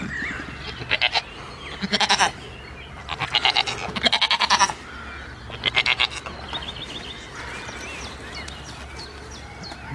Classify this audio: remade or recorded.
recorded